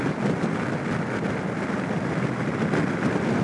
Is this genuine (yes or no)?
yes